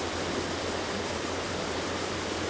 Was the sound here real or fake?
fake